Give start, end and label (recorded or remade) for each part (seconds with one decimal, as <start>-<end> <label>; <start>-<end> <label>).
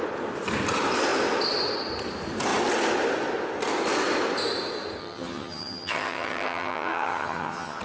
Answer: 0.0-5.0 recorded; 5.0-7.8 remade